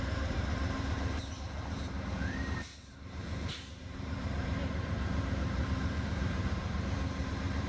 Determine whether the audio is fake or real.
fake